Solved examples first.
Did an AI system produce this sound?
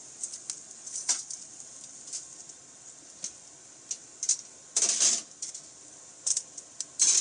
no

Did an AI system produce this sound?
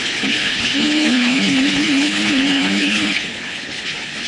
yes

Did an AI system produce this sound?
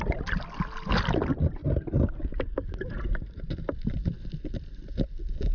no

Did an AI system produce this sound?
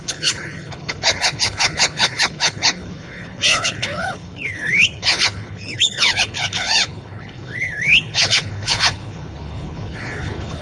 yes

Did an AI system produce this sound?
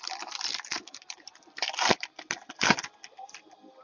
no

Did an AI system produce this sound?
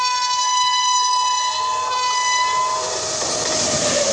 no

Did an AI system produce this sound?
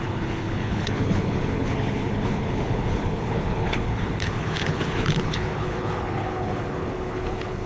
yes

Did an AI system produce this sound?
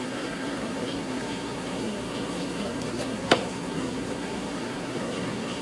yes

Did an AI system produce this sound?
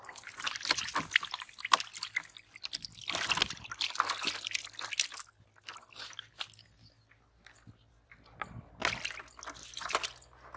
no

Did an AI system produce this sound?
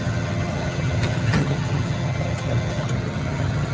yes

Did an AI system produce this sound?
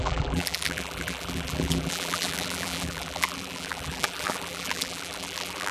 yes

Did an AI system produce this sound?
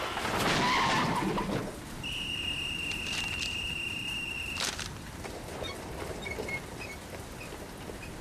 no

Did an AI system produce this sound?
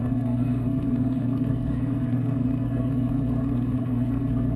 yes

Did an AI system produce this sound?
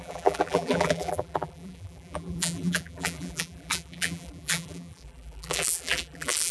yes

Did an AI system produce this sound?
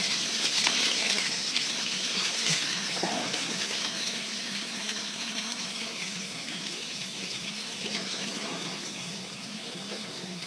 yes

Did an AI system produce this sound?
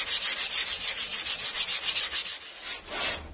no